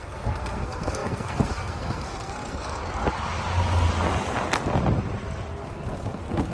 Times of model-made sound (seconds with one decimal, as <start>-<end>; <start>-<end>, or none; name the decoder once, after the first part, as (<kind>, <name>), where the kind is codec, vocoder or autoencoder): 0.0-2.8 (codec, SNAC); 5.6-6.5